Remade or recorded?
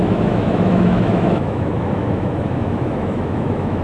remade